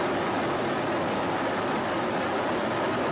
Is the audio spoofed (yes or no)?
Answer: no